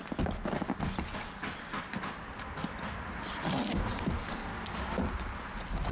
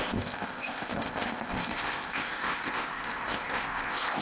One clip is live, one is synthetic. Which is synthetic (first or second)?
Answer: second